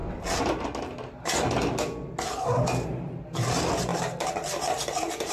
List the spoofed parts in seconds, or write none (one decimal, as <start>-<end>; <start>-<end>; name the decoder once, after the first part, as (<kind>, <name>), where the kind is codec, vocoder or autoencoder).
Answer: none